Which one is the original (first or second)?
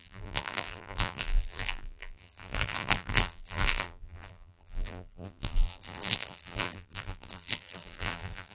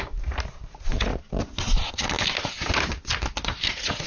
second